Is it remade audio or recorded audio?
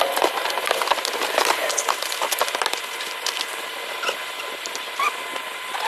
recorded